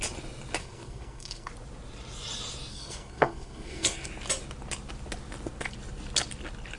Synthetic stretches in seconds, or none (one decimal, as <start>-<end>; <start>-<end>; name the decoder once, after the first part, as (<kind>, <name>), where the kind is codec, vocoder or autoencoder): 0.6-1.5 (codec, SNAC); 2.7-4.1